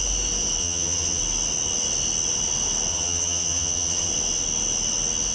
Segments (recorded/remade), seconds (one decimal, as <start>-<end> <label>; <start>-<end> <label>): 0.0-0.6 recorded; 0.6-1.2 remade; 1.2-2.9 recorded; 2.9-4.1 remade; 4.1-5.3 recorded